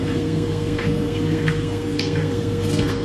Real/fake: fake